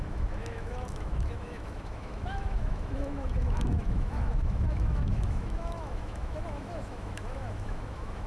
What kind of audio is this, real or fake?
fake